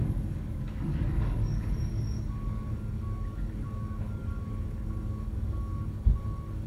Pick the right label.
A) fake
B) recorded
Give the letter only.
A